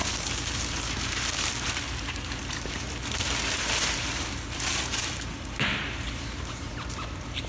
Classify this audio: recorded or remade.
remade